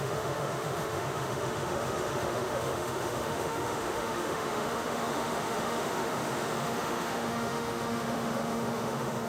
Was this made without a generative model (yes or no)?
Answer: no